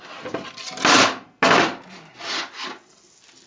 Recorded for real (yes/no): yes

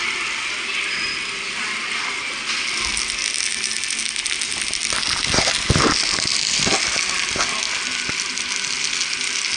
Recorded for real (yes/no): yes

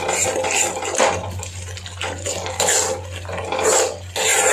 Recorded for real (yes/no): yes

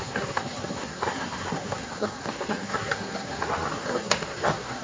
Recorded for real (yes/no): no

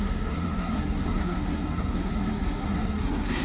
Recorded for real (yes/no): no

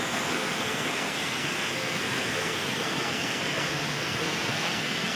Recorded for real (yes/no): no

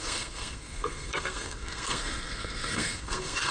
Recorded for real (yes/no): no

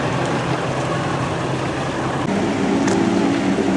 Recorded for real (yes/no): yes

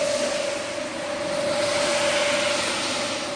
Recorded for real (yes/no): yes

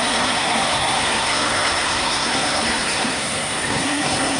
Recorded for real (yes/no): no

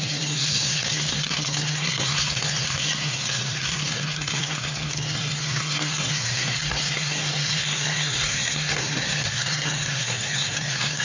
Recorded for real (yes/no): no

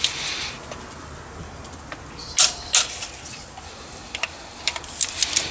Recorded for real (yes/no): yes